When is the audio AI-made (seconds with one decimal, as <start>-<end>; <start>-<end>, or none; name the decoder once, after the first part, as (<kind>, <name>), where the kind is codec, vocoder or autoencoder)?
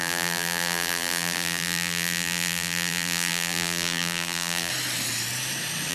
0.0-4.7 (vocoder, BigVGAN v2)